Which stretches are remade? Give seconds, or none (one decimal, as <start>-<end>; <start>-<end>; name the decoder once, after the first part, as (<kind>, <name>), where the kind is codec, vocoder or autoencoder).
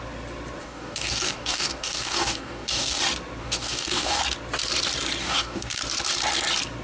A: 0.6-3.0 (codec, DAC); 3.4-4.2; 5.2-5.8